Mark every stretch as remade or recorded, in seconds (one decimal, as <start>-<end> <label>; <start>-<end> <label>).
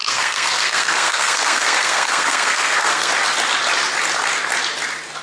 0.0-3.1 remade; 3.1-5.2 recorded